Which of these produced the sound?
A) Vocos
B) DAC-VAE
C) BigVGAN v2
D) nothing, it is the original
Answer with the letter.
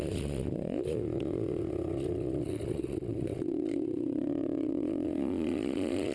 A